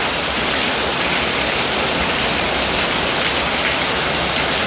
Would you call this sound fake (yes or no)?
no